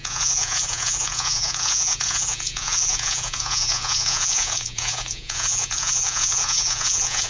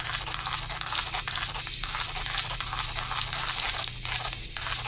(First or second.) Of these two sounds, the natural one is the second